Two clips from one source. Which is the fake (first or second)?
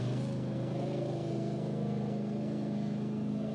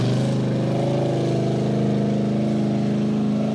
first